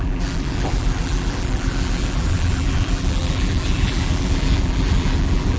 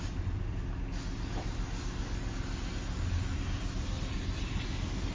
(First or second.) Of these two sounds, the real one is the second